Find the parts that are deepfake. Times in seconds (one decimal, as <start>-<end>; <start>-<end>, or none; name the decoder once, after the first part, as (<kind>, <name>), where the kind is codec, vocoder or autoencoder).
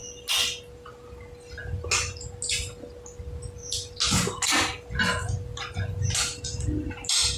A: none